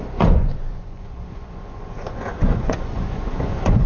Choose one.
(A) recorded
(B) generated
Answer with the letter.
B